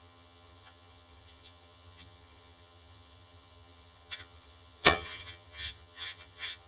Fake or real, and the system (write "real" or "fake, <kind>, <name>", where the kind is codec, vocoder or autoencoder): fake, vocoder, HiFi-GAN